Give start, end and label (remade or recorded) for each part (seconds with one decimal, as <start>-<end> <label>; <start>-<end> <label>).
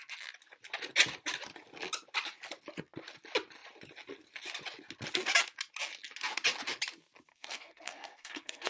0.0-7.3 recorded; 7.3-8.7 remade